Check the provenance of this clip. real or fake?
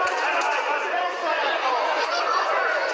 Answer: fake